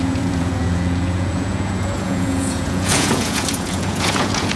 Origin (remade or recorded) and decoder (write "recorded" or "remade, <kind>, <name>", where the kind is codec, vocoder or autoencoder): remade, vocoder, Vocos